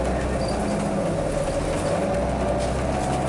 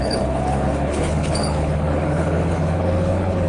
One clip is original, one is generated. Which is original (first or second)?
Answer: first